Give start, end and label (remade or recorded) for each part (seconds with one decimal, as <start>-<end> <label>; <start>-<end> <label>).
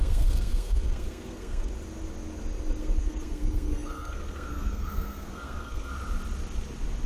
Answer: 0.0-1.7 remade; 1.7-2.8 recorded; 2.8-5.9 remade; 5.9-7.1 recorded